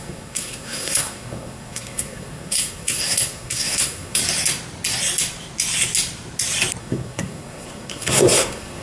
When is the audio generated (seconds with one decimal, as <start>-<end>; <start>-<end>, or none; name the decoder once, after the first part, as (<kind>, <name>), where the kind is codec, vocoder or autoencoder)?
0.0-4.2 (codec, SNAC); 6.8-8.8